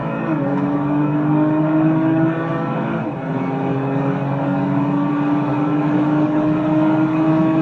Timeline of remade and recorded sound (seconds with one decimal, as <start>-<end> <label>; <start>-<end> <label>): 0.0-3.0 remade; 3.0-3.7 recorded; 3.7-5.1 remade; 5.1-5.5 recorded; 5.5-7.6 remade